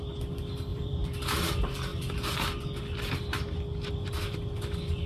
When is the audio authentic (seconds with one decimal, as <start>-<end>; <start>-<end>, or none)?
0.0-0.7; 1.4-5.1